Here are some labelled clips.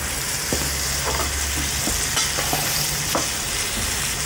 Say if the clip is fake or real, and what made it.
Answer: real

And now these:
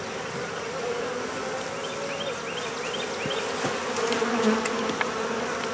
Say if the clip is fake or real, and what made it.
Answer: real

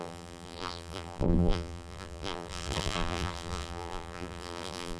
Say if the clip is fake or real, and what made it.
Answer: fake, vocoder, BigVGAN v2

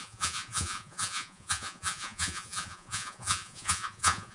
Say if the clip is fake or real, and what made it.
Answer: fake, vocoder, Vocos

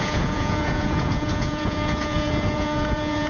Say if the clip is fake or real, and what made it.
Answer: fake, vocoder, Vocos